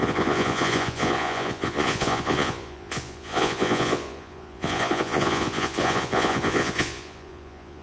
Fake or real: fake